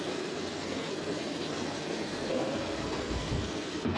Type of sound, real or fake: fake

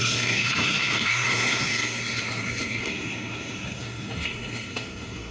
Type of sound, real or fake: fake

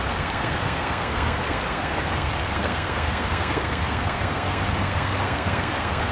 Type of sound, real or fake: fake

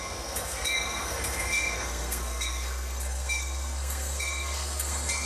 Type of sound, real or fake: fake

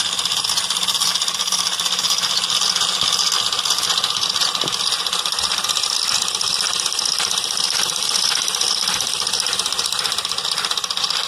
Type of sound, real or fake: real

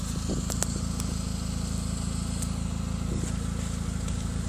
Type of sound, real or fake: real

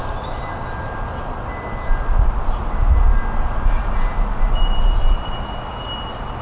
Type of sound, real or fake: real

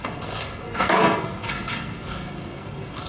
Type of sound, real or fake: fake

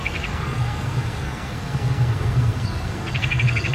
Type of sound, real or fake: fake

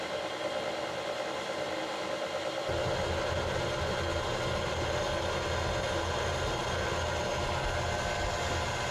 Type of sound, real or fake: real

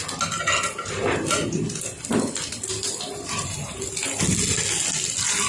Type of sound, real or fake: real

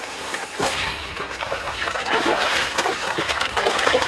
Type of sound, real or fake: fake